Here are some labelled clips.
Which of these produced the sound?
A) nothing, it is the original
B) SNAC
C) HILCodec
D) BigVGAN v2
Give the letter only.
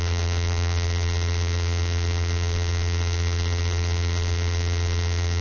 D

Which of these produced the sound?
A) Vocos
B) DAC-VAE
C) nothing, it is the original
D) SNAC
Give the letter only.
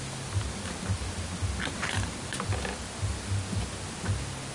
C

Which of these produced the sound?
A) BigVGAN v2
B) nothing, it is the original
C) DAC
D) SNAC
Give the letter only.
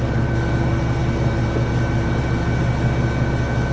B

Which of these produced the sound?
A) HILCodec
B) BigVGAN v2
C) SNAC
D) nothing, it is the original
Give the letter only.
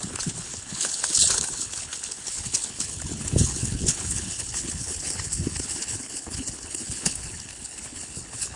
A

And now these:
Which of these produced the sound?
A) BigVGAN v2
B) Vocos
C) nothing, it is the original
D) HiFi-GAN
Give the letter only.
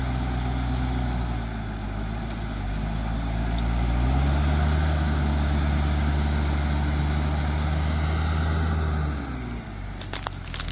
C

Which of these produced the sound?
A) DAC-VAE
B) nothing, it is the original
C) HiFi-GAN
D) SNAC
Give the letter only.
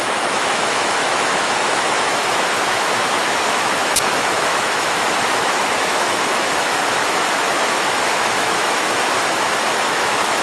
A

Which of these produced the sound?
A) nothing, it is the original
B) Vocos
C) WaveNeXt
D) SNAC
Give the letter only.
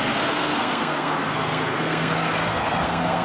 D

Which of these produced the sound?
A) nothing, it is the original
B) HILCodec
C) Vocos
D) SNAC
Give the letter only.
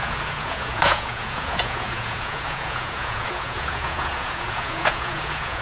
C